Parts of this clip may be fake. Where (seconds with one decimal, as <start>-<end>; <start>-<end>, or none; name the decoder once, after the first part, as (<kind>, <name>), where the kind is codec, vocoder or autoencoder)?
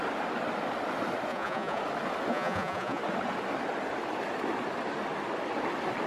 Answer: 1.3-1.8 (vocoder, Vocos); 2.3-3.0